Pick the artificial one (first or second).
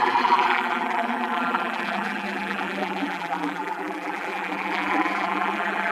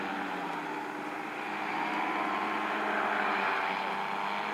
first